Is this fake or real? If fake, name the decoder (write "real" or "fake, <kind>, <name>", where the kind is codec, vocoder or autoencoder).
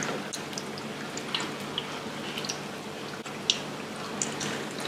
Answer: real